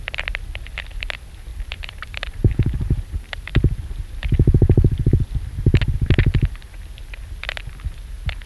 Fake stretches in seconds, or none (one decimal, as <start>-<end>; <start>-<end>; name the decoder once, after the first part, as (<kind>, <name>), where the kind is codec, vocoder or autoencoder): 1.5-3.9 (vocoder, BigVGAN v2)